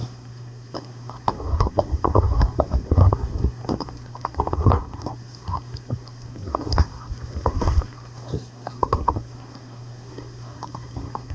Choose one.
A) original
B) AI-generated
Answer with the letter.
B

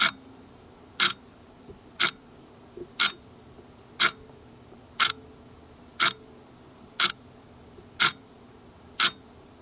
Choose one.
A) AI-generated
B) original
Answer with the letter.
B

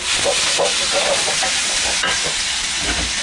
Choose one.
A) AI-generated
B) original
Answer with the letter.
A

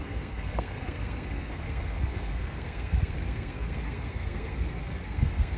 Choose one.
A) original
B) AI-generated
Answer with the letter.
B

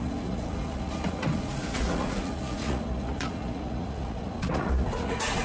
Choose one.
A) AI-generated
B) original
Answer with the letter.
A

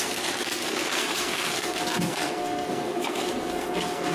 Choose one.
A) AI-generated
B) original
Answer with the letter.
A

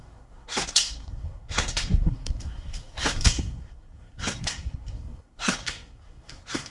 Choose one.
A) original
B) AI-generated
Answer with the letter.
B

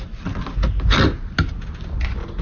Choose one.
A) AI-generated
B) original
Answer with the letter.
B